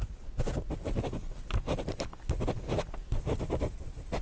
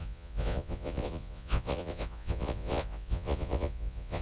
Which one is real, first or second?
first